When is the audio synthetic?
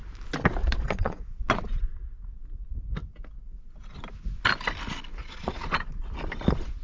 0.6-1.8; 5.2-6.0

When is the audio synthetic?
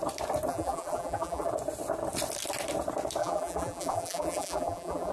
0.5-1.5; 3.2-5.1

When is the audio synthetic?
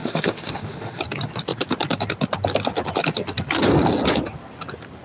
0.0-1.0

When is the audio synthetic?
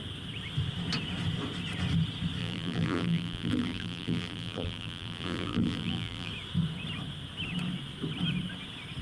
2.4-6.3